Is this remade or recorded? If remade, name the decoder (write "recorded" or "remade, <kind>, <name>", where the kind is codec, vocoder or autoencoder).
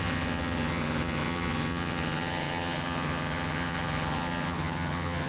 remade, vocoder, HiFi-GAN